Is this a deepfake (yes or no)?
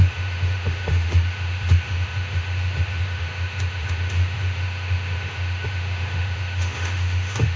yes